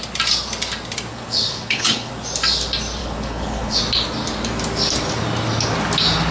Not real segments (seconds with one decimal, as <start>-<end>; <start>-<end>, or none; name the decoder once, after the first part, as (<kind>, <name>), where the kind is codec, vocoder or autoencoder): 1.1-2.1 (codec, HILCodec); 3.0-3.8